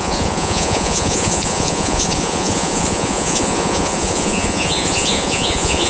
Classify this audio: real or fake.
fake